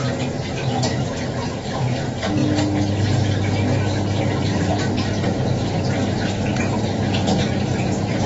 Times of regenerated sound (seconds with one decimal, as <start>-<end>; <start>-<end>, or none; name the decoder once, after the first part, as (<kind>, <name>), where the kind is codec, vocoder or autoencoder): 1.0-2.4 (vocoder, BigVGAN v2); 4.2-4.7; 6.6-8.3